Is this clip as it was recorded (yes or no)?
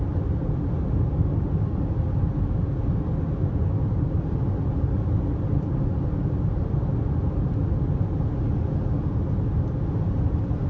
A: yes